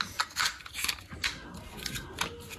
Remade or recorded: recorded